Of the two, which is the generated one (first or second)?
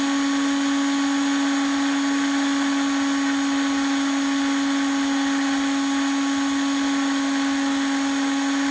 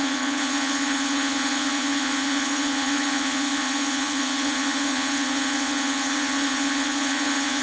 second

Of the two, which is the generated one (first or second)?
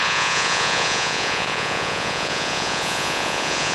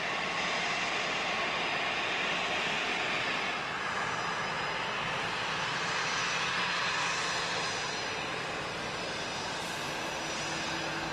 first